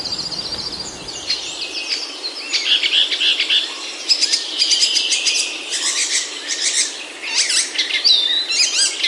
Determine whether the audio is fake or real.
real